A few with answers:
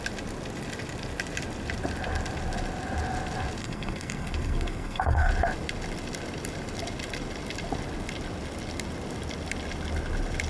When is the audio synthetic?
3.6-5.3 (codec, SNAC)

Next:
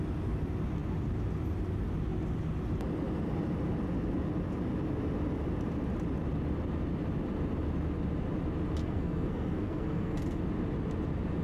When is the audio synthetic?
8.8-10.4 (codec, SNAC)

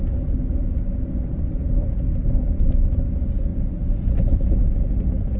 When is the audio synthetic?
none

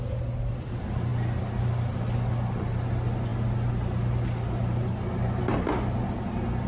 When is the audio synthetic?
none

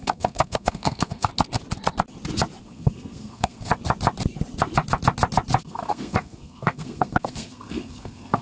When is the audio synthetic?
0.0-1.3 (codec, SNAC); 2.6-3.7; 5.6-8.4

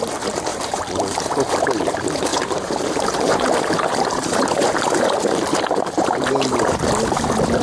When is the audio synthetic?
0.5-1.2 (vocoder, BigVGAN v2); 2.3-6.9

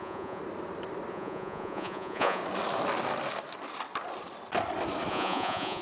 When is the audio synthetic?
0.0-0.4 (vocoder, Vocos); 1.1-2.4; 5.1-5.8